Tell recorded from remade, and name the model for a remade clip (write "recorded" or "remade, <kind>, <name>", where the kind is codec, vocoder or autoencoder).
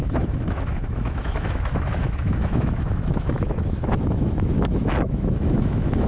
remade, autoencoder, DAC-VAE